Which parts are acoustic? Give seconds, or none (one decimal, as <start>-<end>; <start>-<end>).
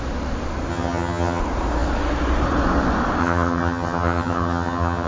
0.0-0.7; 1.4-3.2